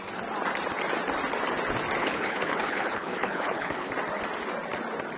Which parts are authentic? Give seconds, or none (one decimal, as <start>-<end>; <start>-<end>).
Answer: 0.0-2.0; 3.9-5.2